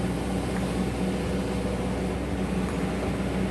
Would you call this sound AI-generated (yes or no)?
no